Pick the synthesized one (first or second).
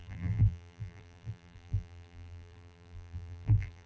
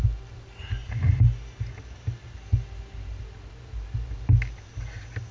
first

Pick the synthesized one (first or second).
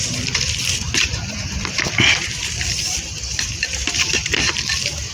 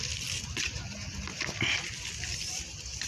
first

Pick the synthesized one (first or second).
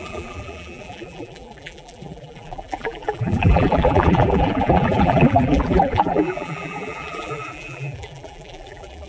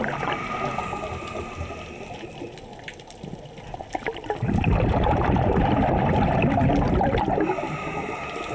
first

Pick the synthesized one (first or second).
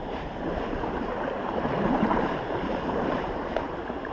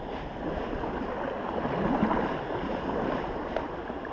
first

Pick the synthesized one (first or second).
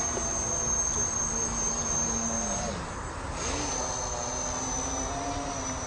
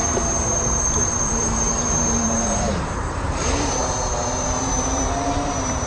second